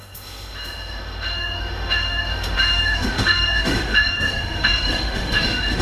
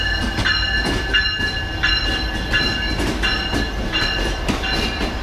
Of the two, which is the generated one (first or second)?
first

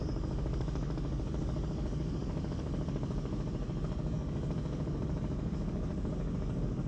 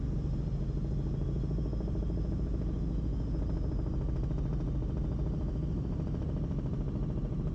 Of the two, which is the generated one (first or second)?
first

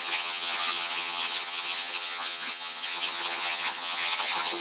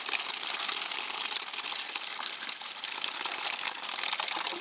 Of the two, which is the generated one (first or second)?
first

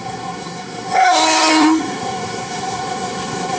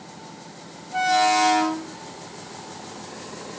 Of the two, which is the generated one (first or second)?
first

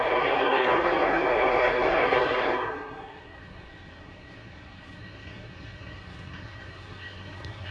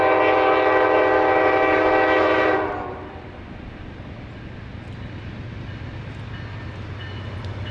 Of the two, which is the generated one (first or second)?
first